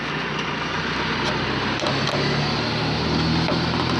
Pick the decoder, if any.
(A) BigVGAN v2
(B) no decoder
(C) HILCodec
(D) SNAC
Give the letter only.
B